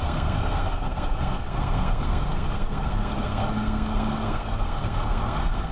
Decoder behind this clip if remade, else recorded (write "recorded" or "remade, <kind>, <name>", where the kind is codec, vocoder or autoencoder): remade, codec, SNAC